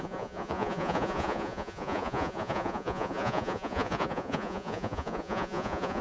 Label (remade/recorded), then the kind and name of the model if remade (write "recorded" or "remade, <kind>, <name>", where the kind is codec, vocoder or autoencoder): remade, vocoder, Vocos